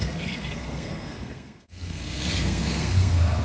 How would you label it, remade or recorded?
remade